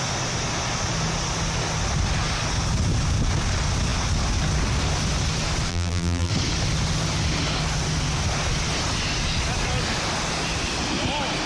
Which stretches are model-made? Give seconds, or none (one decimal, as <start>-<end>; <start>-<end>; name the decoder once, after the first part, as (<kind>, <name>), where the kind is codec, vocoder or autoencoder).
5.7-6.3 (vocoder, BigVGAN v2)